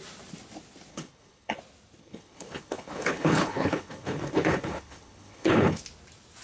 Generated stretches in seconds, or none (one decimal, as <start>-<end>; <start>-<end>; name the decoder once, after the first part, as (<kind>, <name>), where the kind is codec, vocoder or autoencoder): 0.9-1.6 (codec, HILCodec); 2.0-5.8